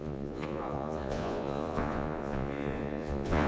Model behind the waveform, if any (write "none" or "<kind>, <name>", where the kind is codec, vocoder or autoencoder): vocoder, Vocos